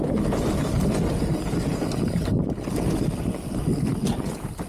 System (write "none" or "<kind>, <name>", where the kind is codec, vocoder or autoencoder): none